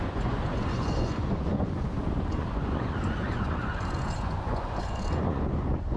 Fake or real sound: fake